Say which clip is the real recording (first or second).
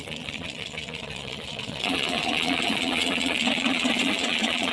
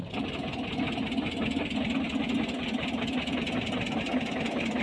second